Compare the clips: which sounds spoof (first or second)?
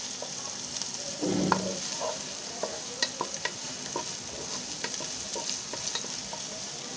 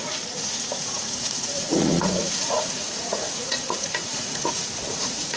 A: second